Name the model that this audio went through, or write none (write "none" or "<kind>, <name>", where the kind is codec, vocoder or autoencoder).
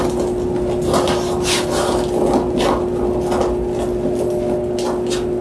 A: none